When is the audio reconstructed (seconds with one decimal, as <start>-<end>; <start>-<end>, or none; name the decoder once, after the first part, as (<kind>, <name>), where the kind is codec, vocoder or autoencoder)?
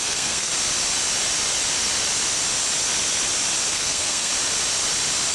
0.0-0.5 (codec, SNAC); 3.7-4.3